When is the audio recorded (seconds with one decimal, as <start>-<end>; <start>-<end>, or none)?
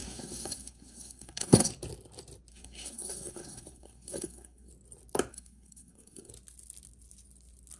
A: 1.7-2.5; 4.7-5.3; 6.3-7.8